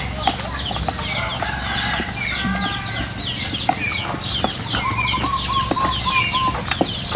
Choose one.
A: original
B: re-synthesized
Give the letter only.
A